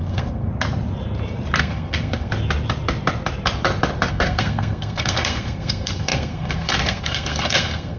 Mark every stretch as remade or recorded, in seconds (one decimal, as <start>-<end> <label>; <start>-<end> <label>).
0.0-0.5 remade; 0.5-1.6 recorded; 1.6-2.3 remade; 2.3-4.1 recorded; 4.1-8.0 remade